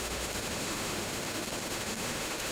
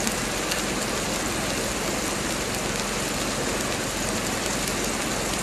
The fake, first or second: first